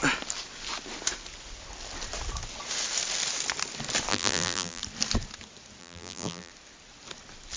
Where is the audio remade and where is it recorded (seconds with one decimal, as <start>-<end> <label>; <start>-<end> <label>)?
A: 0.0-4.1 recorded; 4.1-4.8 remade; 4.8-5.8 recorded; 5.8-6.5 remade; 6.5-7.6 recorded